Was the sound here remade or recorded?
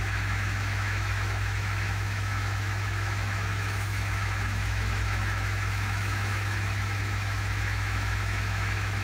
remade